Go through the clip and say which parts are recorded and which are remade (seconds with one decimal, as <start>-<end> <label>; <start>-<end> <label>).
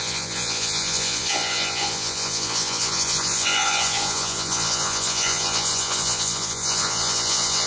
0.0-7.7 remade